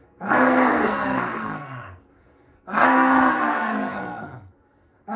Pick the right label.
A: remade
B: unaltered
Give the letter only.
A